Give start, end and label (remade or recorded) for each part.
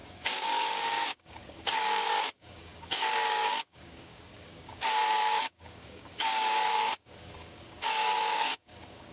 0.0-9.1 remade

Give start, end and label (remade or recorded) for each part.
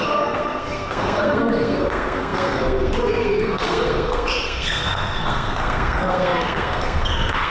0.0-7.5 remade